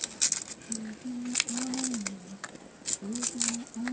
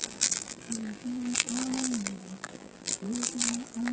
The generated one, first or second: second